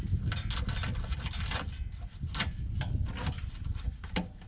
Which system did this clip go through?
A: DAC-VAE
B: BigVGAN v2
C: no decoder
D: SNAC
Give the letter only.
C